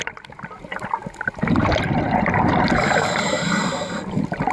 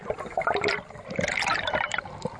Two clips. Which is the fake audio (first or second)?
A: second